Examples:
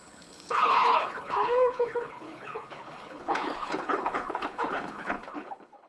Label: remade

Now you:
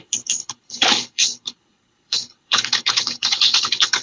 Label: remade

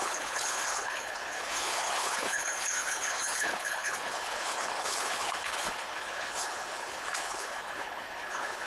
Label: remade